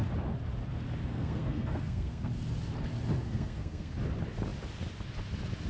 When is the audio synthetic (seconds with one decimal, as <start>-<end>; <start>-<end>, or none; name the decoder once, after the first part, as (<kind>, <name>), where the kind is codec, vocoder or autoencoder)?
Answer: 1.1-2.3 (codec, SNAC); 3.2-3.9